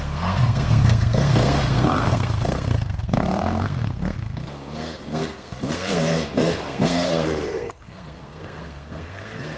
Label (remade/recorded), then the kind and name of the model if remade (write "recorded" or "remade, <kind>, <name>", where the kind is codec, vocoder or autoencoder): remade, codec, SNAC